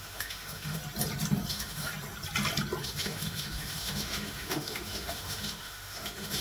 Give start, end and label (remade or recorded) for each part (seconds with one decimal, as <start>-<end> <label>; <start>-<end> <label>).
0.0-0.8 remade; 0.8-1.5 recorded; 1.5-1.9 remade; 1.9-2.8 recorded; 2.8-6.4 remade